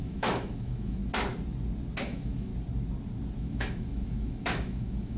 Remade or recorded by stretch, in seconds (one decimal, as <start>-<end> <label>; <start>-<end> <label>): 0.0-1.0 remade; 1.0-2.0 recorded; 2.0-2.5 remade; 2.5-3.4 recorded; 3.4-5.2 remade